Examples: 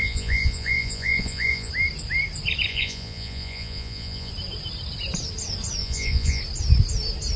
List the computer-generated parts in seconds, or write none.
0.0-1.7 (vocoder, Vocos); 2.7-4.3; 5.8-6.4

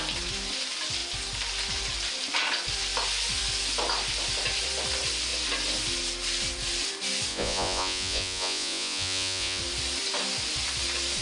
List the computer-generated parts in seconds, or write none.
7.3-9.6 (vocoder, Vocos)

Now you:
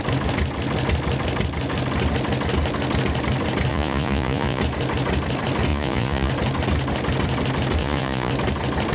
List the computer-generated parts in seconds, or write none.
3.7-4.6 (vocoder, Vocos); 5.7-6.3; 7.8-8.3